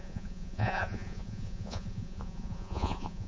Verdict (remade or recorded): remade